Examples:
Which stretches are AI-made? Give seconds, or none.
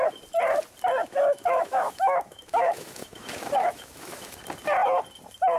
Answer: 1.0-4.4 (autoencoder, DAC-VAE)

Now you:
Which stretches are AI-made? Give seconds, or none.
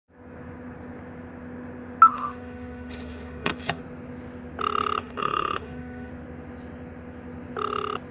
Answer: 2.1-3.8 (autoencoder, DAC-VAE); 5.0-6.1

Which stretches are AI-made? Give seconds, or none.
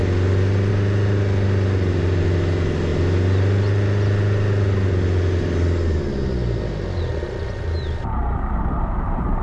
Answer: none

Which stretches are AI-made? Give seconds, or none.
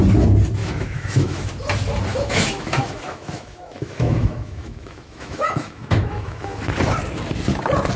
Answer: 0.6-1.5 (autoencoder, DAC-VAE); 2.1-6.6